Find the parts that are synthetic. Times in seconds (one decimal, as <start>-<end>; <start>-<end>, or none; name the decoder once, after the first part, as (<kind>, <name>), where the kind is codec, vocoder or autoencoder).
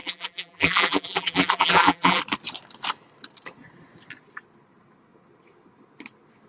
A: 0.0-2.2 (vocoder, BigVGAN v2)